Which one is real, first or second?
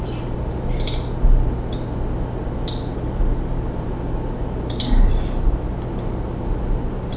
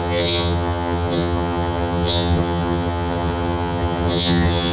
first